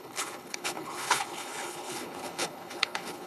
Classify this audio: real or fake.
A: fake